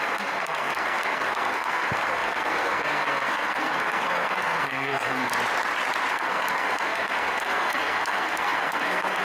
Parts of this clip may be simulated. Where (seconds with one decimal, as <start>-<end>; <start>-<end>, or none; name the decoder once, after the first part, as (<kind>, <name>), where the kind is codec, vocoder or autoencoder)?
0.0-5.3 (codec, SNAC); 6.1-9.2